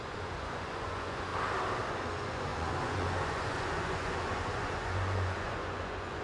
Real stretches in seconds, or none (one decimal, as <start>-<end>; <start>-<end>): 1.3-1.9